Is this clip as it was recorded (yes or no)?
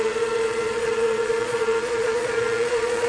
no